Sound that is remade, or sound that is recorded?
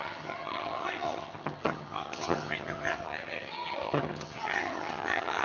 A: remade